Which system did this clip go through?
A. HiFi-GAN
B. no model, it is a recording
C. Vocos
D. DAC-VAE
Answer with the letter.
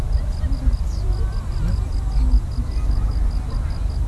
B